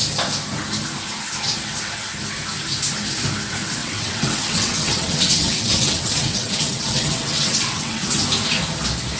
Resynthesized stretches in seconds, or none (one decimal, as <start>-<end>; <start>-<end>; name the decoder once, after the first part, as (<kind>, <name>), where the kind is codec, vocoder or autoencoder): 3.8-8.0 (vocoder, WaveNeXt)